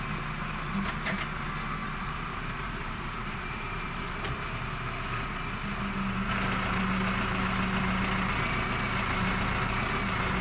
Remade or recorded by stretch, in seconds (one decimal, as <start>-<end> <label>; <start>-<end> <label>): 0.0-1.8 recorded; 1.8-3.9 remade; 3.9-10.4 recorded